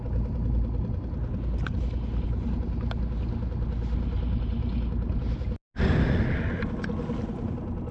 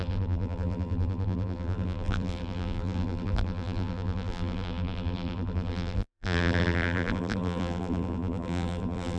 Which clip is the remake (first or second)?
second